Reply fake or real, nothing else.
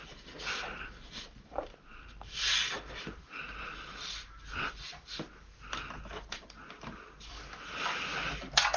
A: real